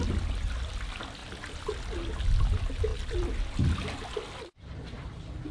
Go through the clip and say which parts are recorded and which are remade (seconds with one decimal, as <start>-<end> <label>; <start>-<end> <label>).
0.0-5.5 recorded